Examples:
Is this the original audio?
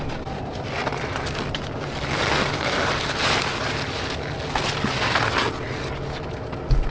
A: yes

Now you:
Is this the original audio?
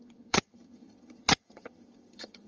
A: no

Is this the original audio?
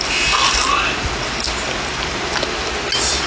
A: yes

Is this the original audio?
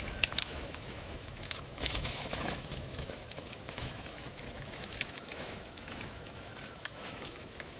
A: no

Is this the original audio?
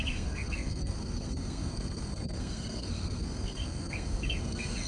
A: no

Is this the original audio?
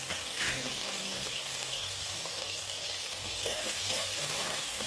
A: no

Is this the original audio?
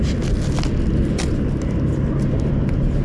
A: yes